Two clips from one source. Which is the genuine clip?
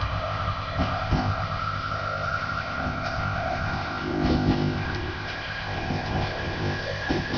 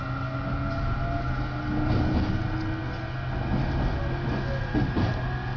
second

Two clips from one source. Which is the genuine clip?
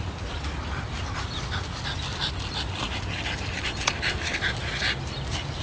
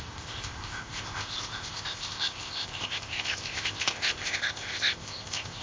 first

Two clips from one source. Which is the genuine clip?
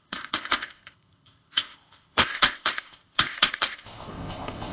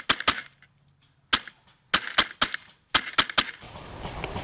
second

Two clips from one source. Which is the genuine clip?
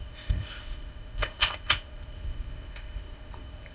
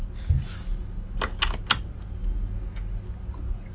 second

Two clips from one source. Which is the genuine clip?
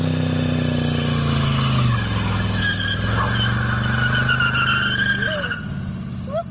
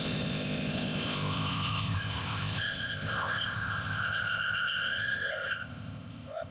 first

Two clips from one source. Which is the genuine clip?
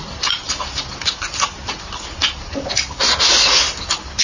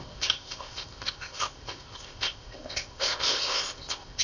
first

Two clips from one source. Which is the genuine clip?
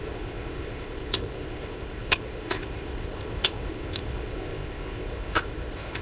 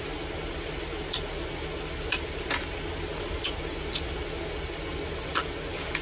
second